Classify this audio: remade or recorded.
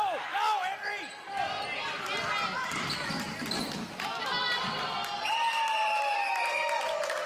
recorded